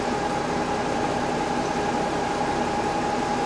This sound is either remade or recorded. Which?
recorded